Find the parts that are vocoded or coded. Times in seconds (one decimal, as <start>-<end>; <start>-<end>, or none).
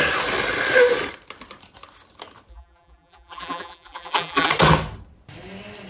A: 2.5-4.5